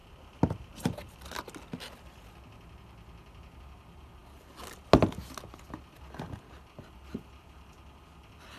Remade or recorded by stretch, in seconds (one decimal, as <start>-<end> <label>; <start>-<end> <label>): 0.0-2.0 remade; 2.0-8.6 recorded

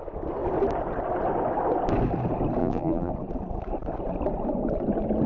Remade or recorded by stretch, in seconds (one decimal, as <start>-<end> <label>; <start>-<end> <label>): 0.0-2.6 recorded; 2.6-3.1 remade; 3.1-5.3 recorded